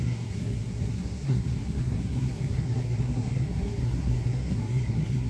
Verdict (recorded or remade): remade